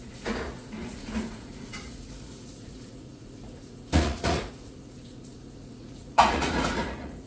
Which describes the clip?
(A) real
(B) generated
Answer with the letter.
B